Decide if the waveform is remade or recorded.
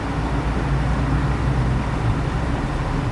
recorded